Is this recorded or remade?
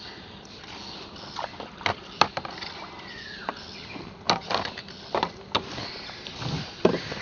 recorded